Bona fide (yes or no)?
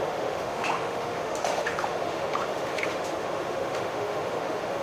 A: no